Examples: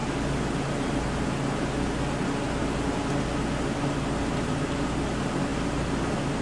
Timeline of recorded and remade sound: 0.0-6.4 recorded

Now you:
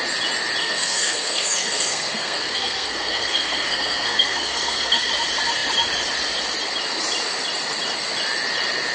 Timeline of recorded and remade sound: 0.0-0.6 recorded; 0.6-5.1 remade; 5.1-8.9 recorded

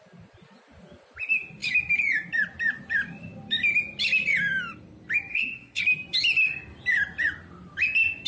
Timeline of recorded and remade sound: 0.0-5.3 recorded; 5.3-5.8 remade; 5.8-8.3 recorded

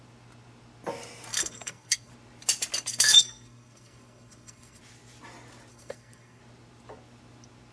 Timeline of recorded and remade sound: 0.0-1.3 recorded; 1.3-2.1 remade; 2.1-2.9 recorded; 2.9-4.8 remade; 4.8-5.7 recorded; 5.7-6.4 remade; 6.4-7.7 recorded

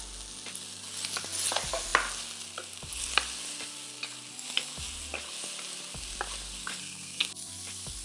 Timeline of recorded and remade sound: 0.0-6.8 recorded; 6.8-7.3 remade; 7.3-8.0 recorded

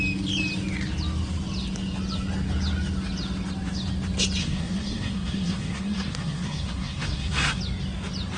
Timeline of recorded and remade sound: 0.0-4.4 recorded; 4.4-7.6 remade; 7.6-8.4 recorded

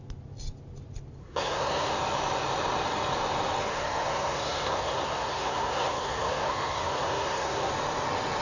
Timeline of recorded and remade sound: 0.0-1.2 recorded; 1.2-1.9 remade; 1.9-3.7 recorded; 3.7-7.7 remade; 7.7-8.4 recorded